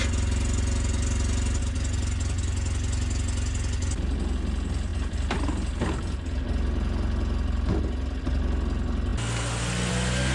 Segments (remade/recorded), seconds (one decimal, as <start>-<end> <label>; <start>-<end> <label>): 0.0-10.3 recorded